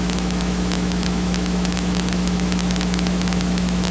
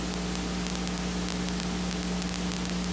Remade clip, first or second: first